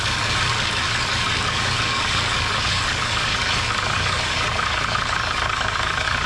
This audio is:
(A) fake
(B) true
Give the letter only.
A